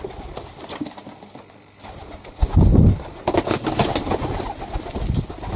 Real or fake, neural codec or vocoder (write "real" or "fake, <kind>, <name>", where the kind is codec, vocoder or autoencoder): real